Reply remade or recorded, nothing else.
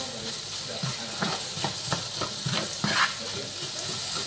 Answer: recorded